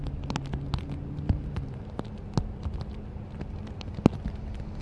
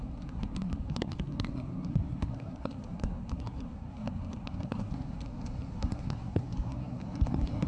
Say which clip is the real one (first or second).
first